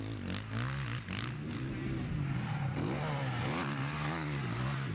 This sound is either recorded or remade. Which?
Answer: recorded